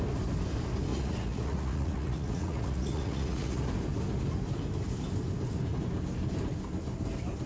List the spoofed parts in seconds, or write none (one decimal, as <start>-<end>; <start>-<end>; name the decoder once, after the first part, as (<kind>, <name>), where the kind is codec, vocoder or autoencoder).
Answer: 0.9-3.6 (vocoder, Vocos)